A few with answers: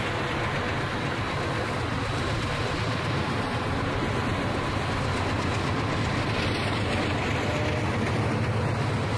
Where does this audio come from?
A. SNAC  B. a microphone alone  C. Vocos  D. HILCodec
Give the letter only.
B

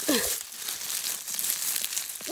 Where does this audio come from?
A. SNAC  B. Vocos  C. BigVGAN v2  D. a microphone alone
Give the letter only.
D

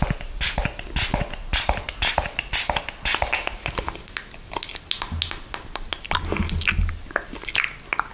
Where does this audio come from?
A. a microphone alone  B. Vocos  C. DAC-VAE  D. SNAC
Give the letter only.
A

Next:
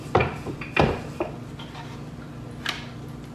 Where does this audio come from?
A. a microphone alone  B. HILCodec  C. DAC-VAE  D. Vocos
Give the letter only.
A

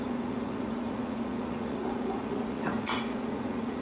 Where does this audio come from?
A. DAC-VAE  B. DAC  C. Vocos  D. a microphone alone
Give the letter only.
C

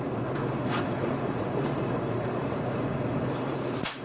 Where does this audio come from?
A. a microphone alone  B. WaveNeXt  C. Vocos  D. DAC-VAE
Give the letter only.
C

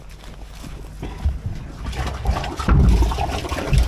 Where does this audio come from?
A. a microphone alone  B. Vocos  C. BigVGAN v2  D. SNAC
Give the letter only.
A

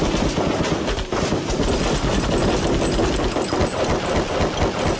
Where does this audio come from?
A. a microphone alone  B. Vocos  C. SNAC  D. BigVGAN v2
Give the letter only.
A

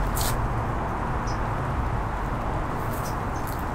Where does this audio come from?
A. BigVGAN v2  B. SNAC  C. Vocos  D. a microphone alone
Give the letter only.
D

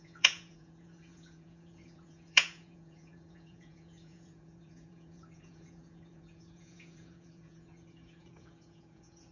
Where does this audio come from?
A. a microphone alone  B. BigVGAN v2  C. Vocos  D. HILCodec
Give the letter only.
C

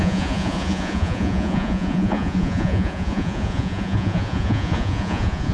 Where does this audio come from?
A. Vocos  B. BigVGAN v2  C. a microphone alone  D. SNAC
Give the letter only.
A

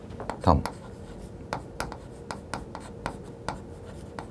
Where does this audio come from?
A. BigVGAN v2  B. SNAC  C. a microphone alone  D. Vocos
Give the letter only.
C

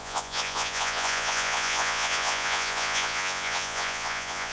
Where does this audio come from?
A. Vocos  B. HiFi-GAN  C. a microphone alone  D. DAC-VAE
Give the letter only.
A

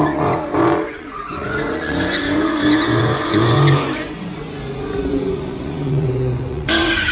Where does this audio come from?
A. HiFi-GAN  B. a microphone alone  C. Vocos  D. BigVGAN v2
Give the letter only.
C